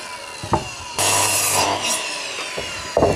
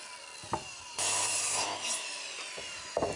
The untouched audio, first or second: first